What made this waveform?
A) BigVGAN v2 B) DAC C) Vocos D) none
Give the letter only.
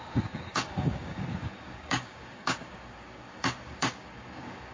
B